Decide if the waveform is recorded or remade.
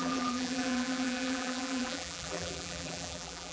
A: remade